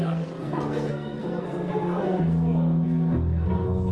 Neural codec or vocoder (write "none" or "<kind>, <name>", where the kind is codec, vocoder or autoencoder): codec, SNAC